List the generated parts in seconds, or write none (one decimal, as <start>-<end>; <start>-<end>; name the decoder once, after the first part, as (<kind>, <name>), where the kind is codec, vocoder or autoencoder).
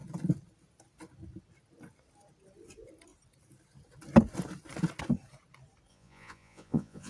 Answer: 5.9-7.1 (vocoder, Vocos)